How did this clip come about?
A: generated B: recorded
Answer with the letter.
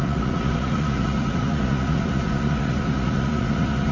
A